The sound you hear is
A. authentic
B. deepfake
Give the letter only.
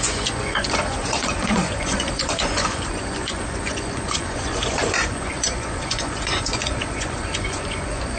B